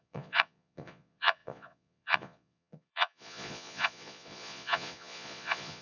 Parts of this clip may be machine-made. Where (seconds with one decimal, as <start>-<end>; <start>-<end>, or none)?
0.0-5.8